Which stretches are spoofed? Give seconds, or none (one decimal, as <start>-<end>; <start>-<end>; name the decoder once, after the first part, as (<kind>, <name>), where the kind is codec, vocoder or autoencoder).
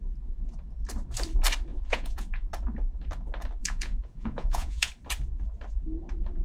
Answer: 1.7-2.5 (vocoder, Vocos); 3.6-4.9